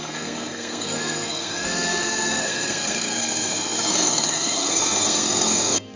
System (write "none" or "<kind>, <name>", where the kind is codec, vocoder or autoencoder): codec, SNAC